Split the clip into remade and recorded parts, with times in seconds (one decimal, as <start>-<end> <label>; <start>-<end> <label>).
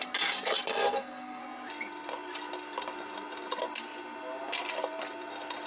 0.0-0.7 recorded; 0.7-1.4 remade; 1.4-5.7 recorded